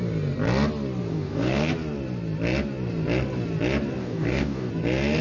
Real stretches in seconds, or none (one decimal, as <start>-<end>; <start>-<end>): 0.0-1.1; 1.7-4.0; 4.7-5.2